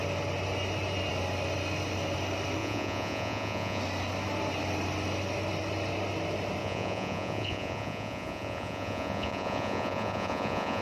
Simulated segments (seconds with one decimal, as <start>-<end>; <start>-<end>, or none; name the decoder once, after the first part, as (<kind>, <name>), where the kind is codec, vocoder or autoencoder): 2.6-3.8 (vocoder, Vocos); 6.6-10.8